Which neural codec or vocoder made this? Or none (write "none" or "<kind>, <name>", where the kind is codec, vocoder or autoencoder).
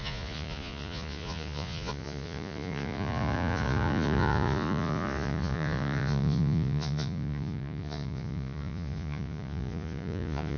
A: vocoder, Vocos